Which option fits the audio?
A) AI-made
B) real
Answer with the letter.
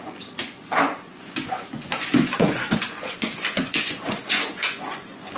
A